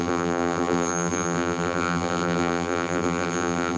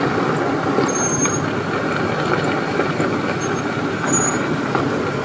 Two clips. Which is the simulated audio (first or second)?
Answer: first